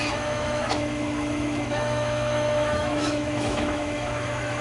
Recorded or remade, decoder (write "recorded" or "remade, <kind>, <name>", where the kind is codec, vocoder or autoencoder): remade, autoencoder, DAC-VAE